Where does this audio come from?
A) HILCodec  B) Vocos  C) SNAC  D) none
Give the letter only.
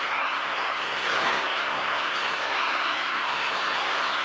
C